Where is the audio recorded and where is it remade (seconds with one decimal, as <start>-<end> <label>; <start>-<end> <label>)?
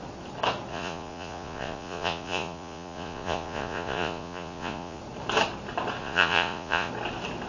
0.0-0.7 recorded; 0.7-5.0 remade; 5.0-6.0 recorded; 6.0-6.9 remade; 6.9-7.5 recorded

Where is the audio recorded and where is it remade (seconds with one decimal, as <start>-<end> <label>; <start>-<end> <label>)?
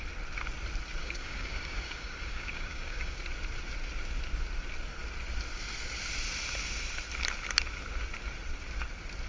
0.0-1.0 recorded; 1.0-3.2 remade; 3.2-9.3 recorded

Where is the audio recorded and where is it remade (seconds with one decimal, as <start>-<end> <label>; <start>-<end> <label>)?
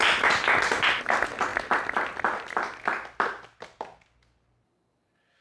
0.0-5.4 recorded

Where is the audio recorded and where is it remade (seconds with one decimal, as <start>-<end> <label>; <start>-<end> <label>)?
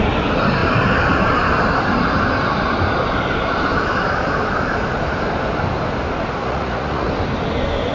0.0-6.4 recorded; 6.4-7.1 remade; 7.1-7.9 recorded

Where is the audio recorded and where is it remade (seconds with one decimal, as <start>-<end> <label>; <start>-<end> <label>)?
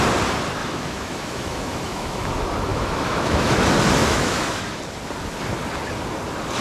0.0-0.6 recorded; 0.6-2.3 remade; 2.3-2.7 recorded; 2.7-3.6 remade; 3.6-4.0 recorded; 4.0-4.8 remade; 4.8-6.6 recorded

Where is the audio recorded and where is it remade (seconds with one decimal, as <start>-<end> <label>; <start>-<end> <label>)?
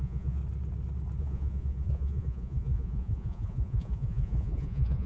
0.0-0.4 remade; 0.4-1.2 recorded; 1.2-5.1 remade